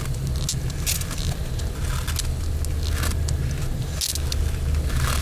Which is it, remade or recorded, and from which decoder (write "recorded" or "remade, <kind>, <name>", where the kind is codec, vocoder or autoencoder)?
recorded